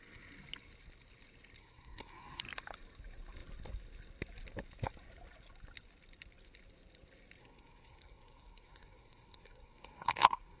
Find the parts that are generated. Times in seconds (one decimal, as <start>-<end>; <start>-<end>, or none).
1.6-2.4; 7.4-10.6